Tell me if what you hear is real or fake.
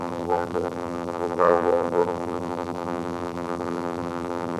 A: fake